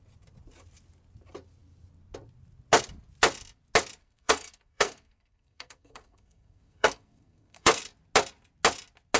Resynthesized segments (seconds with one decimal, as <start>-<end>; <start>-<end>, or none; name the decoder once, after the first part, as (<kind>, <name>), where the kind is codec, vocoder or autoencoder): 4.0-7.8 (codec, SNAC)